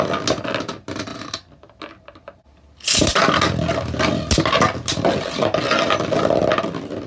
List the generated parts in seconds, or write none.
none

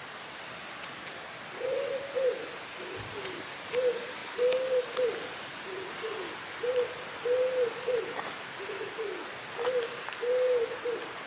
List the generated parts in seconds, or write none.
none

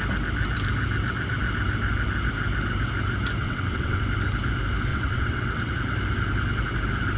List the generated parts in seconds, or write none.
3.4-4.0 (vocoder, WaveNeXt); 4.9-5.7